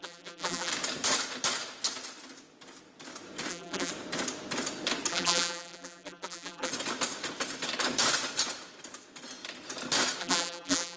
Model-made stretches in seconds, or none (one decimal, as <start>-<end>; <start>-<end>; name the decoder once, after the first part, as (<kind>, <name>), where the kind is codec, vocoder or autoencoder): 0.0-0.7 (vocoder, BigVGAN v2); 3.5-3.9; 5.1-6.7; 10.2-11.0